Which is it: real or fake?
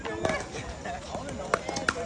real